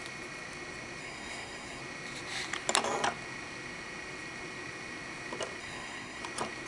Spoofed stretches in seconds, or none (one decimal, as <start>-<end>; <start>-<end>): 1.0-1.8; 5.6-6.2